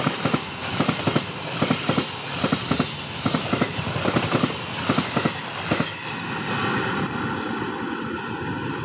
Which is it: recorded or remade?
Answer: recorded